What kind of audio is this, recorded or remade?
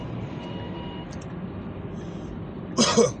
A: recorded